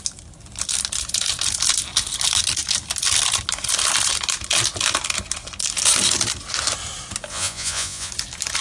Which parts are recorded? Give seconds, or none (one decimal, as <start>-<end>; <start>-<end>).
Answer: 0.0-7.3; 8.1-8.6